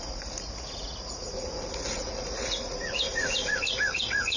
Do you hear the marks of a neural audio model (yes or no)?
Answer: yes